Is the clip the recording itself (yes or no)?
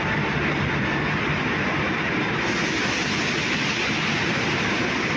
yes